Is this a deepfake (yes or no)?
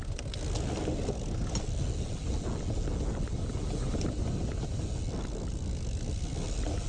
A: no